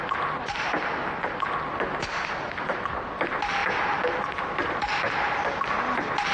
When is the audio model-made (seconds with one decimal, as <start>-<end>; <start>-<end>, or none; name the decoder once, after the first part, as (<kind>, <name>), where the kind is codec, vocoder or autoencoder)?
none